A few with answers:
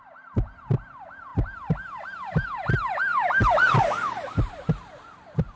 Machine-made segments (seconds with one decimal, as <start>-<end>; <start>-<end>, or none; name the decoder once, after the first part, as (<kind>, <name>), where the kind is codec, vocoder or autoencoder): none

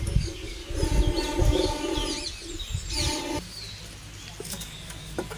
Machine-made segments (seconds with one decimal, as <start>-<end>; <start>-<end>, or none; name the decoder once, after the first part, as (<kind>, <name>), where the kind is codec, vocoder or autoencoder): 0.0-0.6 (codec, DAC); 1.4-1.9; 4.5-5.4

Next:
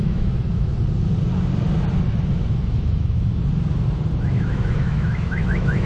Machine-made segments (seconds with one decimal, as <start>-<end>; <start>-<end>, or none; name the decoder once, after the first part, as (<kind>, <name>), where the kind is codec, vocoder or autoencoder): 0.0-0.7 (autoencoder, DAC-VAE); 2.6-3.3; 4.2-5.9

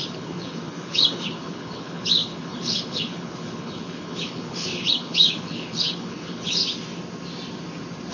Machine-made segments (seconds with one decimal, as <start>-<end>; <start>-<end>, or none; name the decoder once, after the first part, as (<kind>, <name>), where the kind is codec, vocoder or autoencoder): 0.0-6.6 (codec, HILCodec)